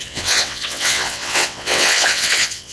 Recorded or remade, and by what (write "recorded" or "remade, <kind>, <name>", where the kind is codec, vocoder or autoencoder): remade, vocoder, WaveNeXt